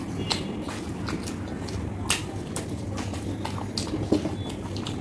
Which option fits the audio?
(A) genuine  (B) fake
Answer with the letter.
A